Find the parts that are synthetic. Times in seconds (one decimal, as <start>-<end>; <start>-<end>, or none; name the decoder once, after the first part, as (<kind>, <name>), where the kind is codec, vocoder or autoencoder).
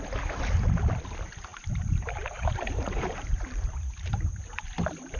1.5-4.4 (vocoder, BigVGAN v2)